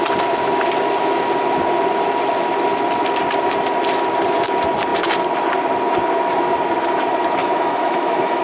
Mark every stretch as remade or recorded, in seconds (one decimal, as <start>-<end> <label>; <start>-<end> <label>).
0.0-7.4 recorded; 7.4-8.4 remade